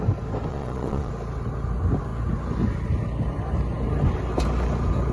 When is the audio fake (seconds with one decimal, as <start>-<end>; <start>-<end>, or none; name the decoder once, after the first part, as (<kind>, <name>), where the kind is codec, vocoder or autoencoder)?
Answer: 0.5-1.1 (vocoder, Vocos)